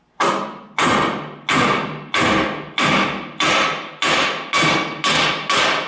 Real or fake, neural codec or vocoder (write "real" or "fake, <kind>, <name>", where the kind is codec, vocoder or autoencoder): real